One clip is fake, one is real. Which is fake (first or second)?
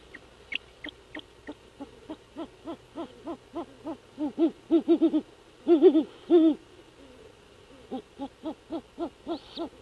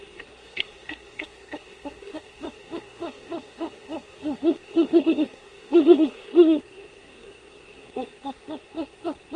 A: second